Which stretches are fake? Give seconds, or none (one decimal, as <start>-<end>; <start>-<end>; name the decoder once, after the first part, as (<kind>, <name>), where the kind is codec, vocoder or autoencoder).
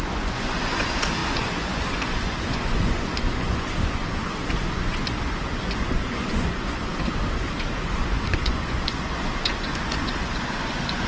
0.0-11.1 (vocoder, Vocos)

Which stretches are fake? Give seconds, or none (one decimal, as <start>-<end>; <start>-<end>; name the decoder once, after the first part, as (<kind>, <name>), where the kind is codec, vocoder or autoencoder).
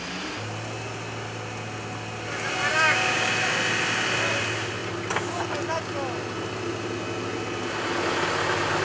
2.7-3.3 (codec, DAC)